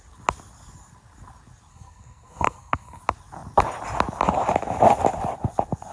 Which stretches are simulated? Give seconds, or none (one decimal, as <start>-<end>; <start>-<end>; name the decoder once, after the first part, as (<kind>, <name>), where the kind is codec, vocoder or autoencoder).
1.7-3.0 (codec, SNAC)